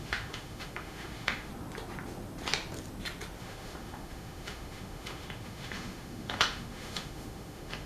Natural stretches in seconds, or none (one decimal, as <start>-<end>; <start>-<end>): 1.5-3.4